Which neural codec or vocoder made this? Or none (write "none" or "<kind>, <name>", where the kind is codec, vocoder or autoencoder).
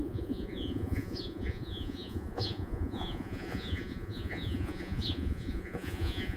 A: vocoder, Vocos